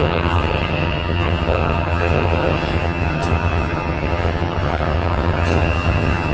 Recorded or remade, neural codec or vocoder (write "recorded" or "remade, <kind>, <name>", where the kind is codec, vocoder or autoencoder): remade, vocoder, HiFi-GAN